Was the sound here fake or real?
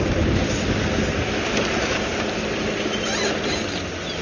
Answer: real